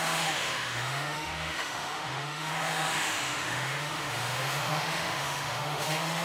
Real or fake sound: fake